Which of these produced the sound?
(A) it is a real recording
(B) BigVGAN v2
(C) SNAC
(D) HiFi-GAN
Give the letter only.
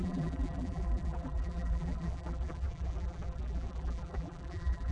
B